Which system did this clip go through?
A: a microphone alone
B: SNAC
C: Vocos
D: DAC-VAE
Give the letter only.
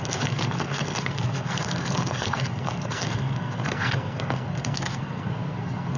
B